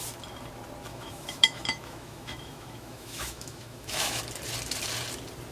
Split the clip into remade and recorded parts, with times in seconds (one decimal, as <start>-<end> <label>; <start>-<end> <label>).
0.0-0.9 recorded; 0.9-4.2 remade; 4.2-5.5 recorded